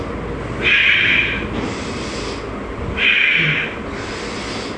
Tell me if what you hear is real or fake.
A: real